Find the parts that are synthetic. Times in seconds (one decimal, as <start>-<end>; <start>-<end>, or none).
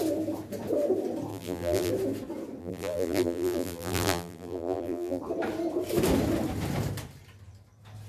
1.3-1.9; 2.6-5.2